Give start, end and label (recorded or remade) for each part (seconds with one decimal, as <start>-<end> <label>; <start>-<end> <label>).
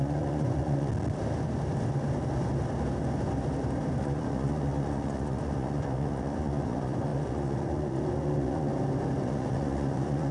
0.0-0.9 remade; 0.9-4.0 recorded; 4.0-8.7 remade; 8.7-9.2 recorded; 9.2-10.3 remade